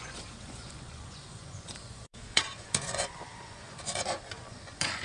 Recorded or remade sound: remade